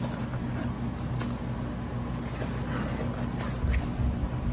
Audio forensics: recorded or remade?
recorded